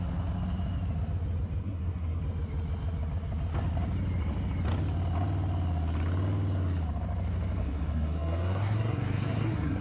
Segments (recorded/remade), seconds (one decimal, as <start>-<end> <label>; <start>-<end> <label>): 0.0-1.6 recorded; 1.6-2.2 remade; 2.2-7.6 recorded; 7.6-9.8 remade